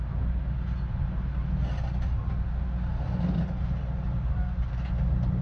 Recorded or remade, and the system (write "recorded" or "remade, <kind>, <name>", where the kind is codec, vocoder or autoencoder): recorded